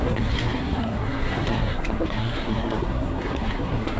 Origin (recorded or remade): remade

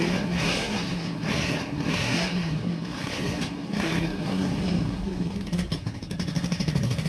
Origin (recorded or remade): remade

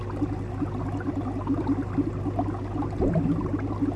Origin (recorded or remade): recorded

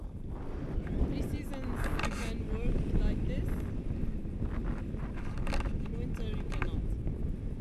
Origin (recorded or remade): recorded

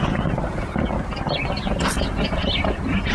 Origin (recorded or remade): recorded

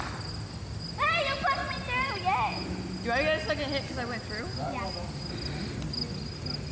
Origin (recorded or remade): recorded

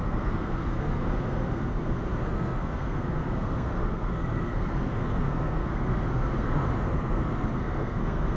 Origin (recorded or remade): remade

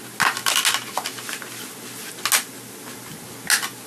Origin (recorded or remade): recorded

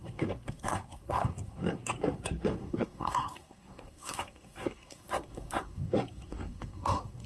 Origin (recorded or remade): remade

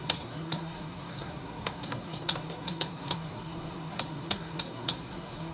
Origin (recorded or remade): remade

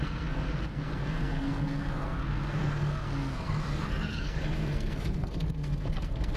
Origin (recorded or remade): remade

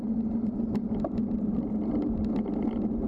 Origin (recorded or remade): recorded